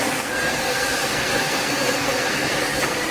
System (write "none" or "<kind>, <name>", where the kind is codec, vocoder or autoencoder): codec, SNAC